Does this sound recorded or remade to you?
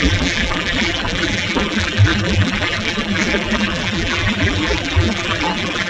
remade